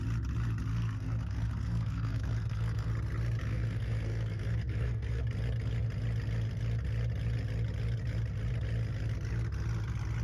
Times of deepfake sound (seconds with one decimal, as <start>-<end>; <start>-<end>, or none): 0.7-2.9; 3.4-5.2